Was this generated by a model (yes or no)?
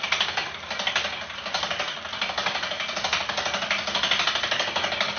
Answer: no